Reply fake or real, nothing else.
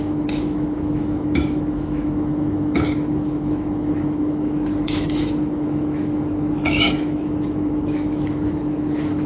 fake